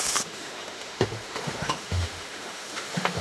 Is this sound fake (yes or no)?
yes